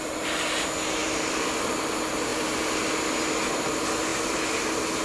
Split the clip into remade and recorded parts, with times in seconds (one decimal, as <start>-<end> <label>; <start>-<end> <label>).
0.0-5.0 recorded